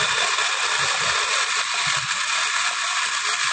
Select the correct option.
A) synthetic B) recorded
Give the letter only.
B